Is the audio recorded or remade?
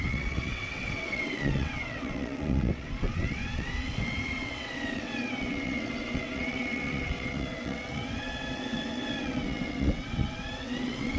remade